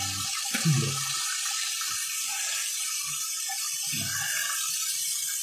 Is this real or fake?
real